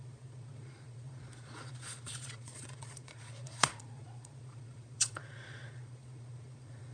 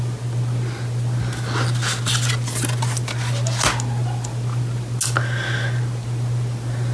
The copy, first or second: first